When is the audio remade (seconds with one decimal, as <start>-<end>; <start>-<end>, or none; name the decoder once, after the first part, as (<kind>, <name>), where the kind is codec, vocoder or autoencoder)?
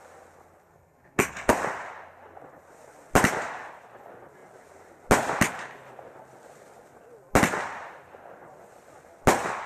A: 0.7-1.5 (codec, SNAC)